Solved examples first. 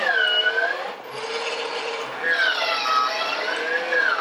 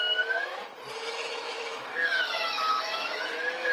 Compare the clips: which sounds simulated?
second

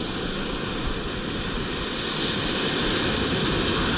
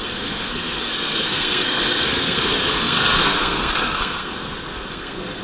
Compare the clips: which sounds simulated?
second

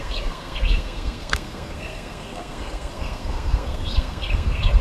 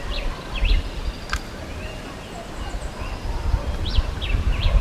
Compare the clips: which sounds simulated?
first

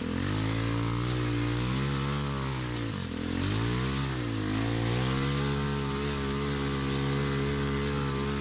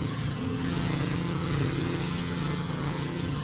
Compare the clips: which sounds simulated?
second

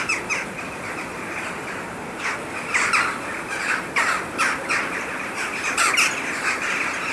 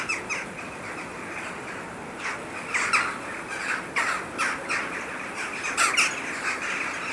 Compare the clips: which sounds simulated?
first